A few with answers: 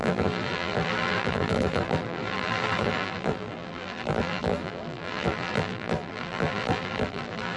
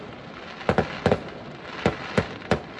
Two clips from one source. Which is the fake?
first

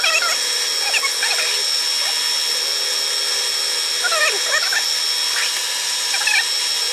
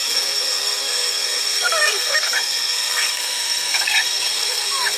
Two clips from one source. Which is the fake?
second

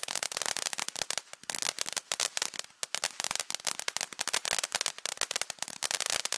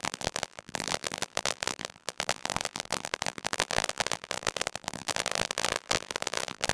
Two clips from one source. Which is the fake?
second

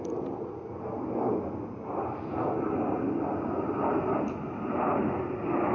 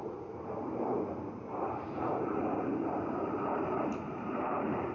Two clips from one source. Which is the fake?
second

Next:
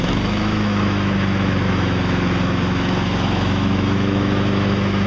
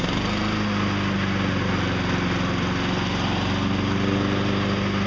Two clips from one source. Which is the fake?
first